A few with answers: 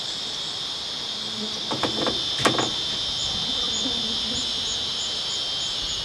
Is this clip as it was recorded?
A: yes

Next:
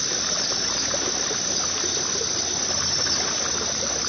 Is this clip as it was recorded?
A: yes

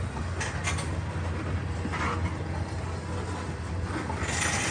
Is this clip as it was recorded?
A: yes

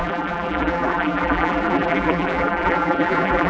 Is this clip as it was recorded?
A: no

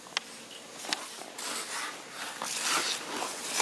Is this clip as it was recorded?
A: yes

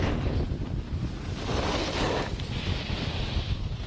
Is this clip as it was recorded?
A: no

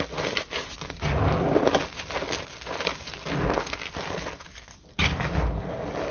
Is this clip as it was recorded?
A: yes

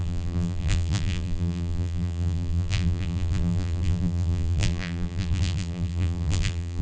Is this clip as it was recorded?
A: no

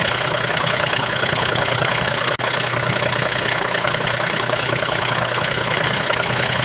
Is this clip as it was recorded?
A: no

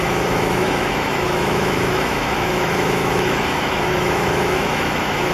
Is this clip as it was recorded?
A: no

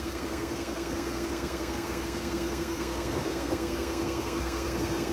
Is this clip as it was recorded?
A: no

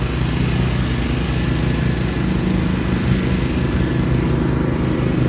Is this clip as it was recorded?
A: yes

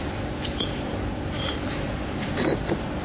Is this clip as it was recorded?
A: yes